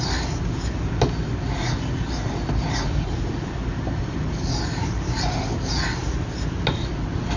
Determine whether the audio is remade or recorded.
recorded